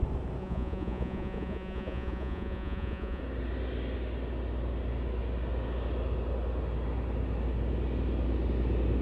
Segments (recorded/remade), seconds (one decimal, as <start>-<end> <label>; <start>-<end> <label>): 0.0-0.4 recorded; 0.4-3.2 remade; 3.2-9.0 recorded